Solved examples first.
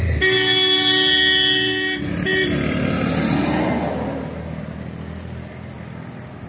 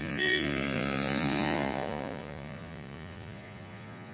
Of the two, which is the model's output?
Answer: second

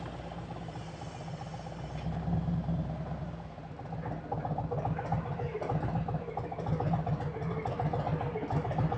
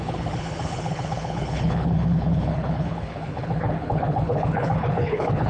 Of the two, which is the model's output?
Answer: second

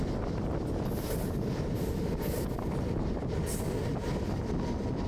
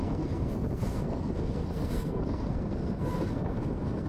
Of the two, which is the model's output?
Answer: second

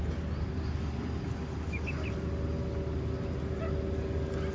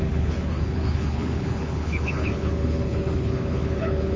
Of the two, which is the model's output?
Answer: second